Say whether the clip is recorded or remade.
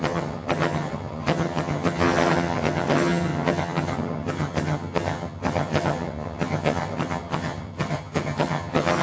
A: remade